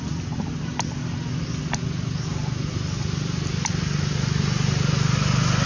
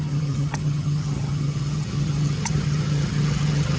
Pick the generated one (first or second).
second